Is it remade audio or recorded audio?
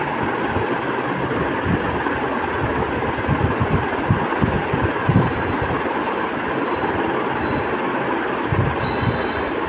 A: recorded